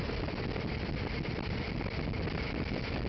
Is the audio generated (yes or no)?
no